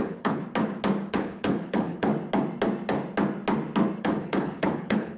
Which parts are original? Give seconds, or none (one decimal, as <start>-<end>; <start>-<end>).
0.4-1.1; 2.1-4.0